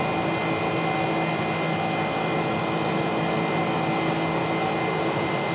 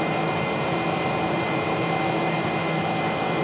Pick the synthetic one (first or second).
second